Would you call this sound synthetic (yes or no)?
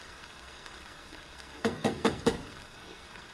yes